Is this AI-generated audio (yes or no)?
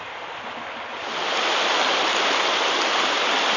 no